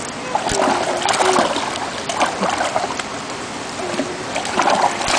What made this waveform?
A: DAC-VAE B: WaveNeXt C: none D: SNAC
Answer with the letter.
C